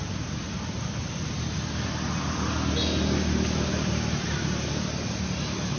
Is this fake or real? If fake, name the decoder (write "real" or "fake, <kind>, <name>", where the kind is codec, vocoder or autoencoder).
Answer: real